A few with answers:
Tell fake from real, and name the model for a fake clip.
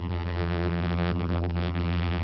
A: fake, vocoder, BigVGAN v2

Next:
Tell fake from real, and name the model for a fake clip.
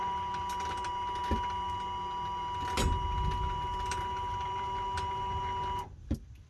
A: real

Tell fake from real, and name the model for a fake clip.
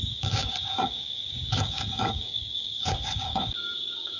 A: fake, codec, DAC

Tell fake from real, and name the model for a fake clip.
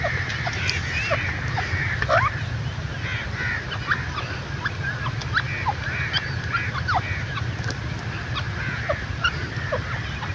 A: real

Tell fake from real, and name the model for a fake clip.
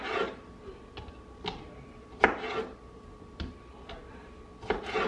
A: real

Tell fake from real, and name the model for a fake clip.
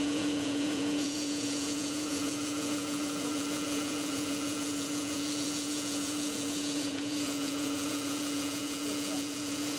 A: fake, vocoder, Vocos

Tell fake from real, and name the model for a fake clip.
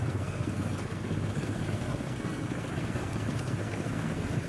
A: fake, codec, SNAC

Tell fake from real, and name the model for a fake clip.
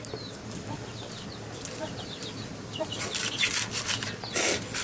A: real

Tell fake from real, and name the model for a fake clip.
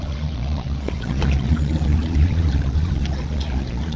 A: fake, vocoder, Vocos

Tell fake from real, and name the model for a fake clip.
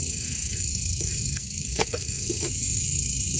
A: fake, codec, SNAC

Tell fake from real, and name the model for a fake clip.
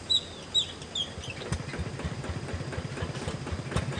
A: real